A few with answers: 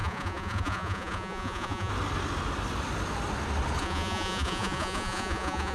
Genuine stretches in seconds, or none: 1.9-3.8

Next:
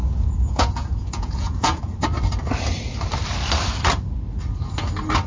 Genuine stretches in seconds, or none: 1.8-5.3

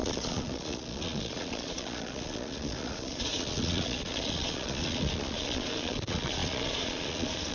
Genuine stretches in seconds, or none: none

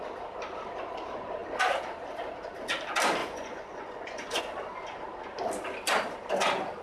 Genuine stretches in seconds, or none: 0.0-3.2; 4.4-6.8

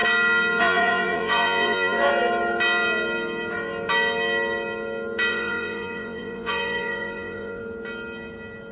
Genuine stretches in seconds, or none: 0.0-0.6; 2.1-5.3; 7.6-8.7